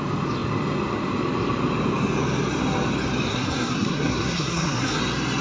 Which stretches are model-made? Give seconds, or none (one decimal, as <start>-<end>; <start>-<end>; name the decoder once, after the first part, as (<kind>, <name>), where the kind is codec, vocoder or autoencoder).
3.3-5.0 (codec, SNAC)